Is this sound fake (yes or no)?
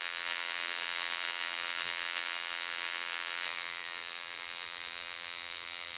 yes